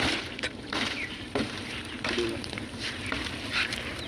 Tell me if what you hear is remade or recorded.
remade